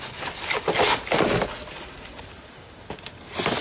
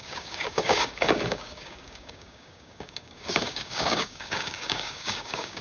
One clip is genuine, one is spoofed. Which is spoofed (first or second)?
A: second